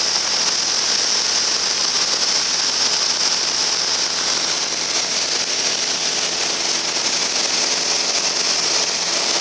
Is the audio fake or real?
real